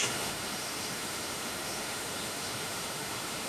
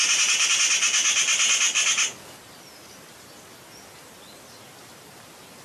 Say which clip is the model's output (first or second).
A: first